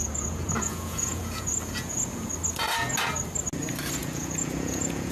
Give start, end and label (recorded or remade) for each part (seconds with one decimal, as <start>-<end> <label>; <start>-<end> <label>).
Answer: 0.0-2.3 remade; 2.3-4.0 recorded; 4.0-5.1 remade